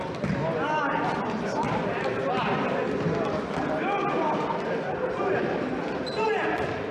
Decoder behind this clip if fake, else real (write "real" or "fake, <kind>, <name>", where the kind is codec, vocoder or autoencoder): real